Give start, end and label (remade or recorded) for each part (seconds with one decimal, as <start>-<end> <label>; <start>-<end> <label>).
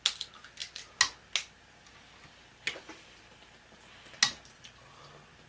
0.0-5.5 recorded